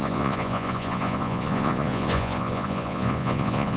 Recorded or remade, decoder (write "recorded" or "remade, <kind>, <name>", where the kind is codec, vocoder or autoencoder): remade, vocoder, Vocos